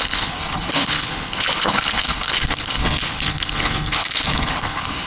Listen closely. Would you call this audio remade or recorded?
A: remade